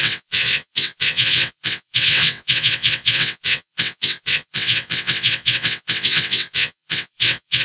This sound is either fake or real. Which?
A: fake